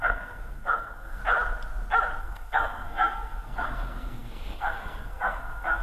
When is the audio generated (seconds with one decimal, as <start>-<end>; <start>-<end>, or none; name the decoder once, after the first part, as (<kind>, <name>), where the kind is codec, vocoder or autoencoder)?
0.0-1.2 (codec, SNAC); 2.2-5.8

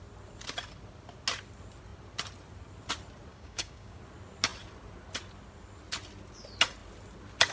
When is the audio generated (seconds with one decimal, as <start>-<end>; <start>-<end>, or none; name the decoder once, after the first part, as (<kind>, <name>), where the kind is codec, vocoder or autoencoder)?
3.3-4.0 (codec, DAC)

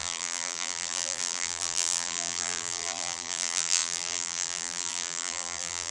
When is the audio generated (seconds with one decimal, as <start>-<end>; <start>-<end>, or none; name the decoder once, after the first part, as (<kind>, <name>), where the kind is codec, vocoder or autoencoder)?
0.0-5.9 (vocoder, BigVGAN v2)

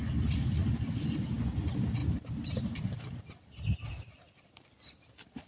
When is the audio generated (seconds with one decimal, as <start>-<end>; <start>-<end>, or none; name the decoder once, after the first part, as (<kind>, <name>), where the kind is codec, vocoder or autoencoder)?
none

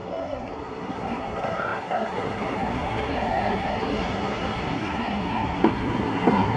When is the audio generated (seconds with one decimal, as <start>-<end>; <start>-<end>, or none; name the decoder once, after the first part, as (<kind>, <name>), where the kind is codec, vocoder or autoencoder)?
0.0-6.6 (codec, SNAC)

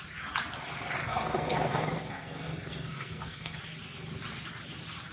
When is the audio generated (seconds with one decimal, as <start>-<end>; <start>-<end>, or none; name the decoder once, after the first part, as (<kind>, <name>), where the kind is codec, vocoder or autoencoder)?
1.0-3.6 (codec, SNAC)

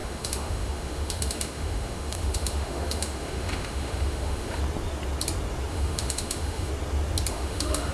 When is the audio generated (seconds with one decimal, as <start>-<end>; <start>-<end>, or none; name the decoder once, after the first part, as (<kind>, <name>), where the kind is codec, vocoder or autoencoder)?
0.0-4.6 (autoencoder, DAC-VAE); 5.7-6.7; 7.3-7.9

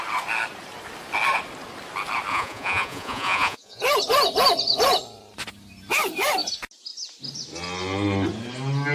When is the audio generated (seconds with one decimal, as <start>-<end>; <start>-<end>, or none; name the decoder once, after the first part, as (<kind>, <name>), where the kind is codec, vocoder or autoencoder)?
2.3-3.8 (vocoder, Vocos)